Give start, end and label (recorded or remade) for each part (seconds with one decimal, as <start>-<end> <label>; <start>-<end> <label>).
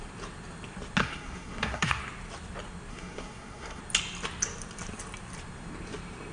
0.0-1.0 recorded; 1.0-2.0 remade; 2.0-2.9 recorded; 2.9-3.8 remade; 3.8-6.3 recorded